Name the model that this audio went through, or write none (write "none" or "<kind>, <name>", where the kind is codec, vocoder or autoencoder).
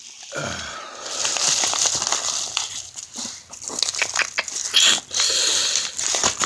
none